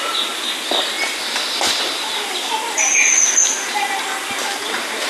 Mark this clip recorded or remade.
recorded